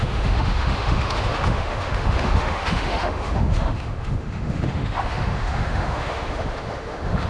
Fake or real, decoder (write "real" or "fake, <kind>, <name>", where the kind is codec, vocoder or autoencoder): fake, autoencoder, DAC-VAE